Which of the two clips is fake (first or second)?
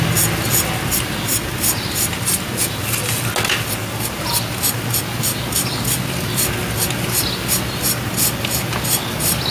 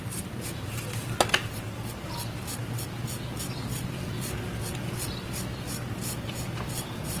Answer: second